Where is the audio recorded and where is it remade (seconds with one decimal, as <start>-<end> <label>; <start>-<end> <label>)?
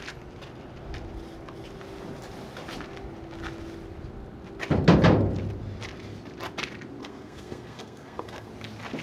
0.0-7.0 recorded; 7.0-8.5 remade; 8.5-9.0 recorded